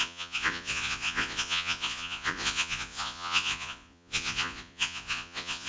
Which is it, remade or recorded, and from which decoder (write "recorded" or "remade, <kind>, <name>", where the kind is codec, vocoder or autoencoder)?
remade, vocoder, Vocos